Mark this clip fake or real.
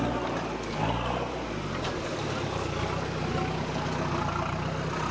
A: real